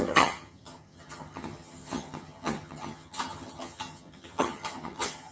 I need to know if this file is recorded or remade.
remade